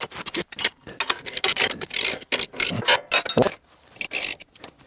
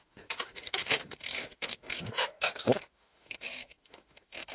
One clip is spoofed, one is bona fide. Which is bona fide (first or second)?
first